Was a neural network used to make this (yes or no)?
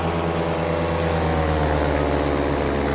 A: no